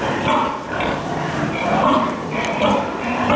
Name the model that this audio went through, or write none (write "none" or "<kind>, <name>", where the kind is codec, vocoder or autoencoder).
vocoder, BigVGAN v2